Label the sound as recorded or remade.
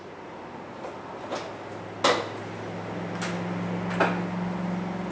recorded